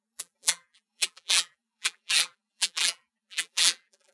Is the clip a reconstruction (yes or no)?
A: yes